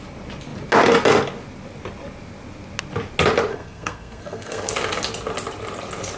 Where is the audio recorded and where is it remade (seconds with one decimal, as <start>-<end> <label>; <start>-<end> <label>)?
0.0-3.5 recorded; 3.5-4.7 remade; 4.7-6.2 recorded